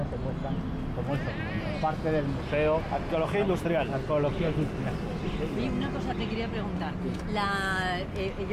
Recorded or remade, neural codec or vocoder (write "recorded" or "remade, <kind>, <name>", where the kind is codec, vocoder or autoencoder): recorded